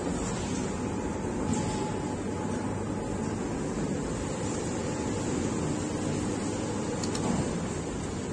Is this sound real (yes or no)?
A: yes